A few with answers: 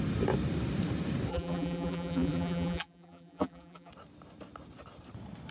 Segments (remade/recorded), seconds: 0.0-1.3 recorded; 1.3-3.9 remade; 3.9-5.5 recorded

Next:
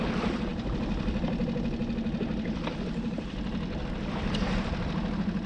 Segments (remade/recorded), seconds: 0.0-5.5 recorded

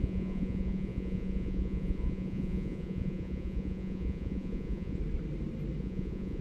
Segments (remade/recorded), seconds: 0.0-5.0 remade; 5.0-5.8 recorded; 5.8-6.4 remade

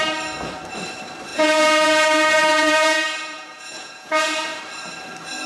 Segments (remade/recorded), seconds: 0.0-1.3 recorded; 1.3-4.6 remade; 4.6-5.5 recorded

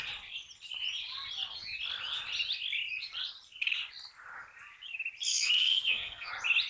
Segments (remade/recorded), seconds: 0.0-5.3 recorded; 5.3-6.3 remade; 6.3-6.7 recorded

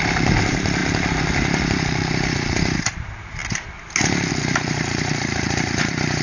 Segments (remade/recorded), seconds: 0.0-3.4 remade; 3.4-4.3 recorded; 4.3-6.2 remade

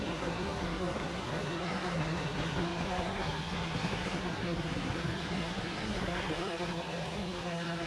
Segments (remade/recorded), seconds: 0.0-7.9 remade